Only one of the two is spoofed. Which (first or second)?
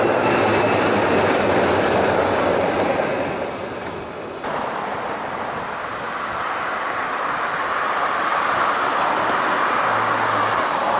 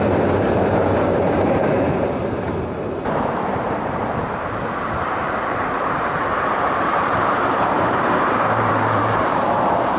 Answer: second